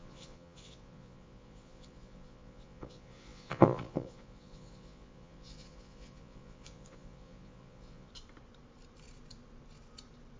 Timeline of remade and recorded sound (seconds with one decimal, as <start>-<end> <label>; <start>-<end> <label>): 0.0-8.1 remade; 8.1-10.4 recorded